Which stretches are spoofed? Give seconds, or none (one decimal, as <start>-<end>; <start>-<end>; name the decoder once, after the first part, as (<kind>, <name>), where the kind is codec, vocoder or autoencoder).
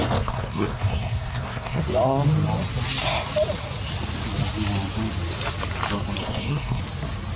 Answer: 0.0-1.8 (codec, SNAC); 6.2-6.8